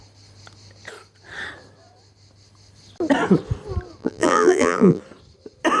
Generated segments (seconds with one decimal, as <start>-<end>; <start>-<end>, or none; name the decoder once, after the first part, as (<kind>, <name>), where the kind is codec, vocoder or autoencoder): 4.0-5.0 (vocoder, BigVGAN v2)